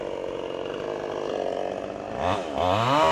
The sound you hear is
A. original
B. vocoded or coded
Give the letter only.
A